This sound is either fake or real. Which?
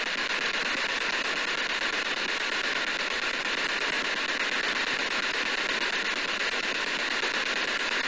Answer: real